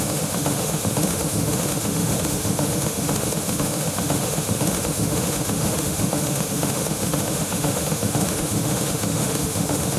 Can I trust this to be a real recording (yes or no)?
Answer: no